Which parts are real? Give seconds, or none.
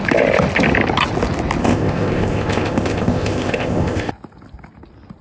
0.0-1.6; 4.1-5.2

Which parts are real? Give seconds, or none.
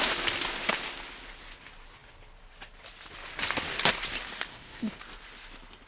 0.0-4.5; 5.0-5.9